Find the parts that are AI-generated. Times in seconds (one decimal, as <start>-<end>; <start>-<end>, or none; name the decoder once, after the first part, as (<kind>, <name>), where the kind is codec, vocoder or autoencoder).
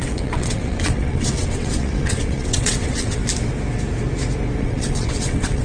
0.0-3.2 (vocoder, WaveNeXt); 4.6-5.6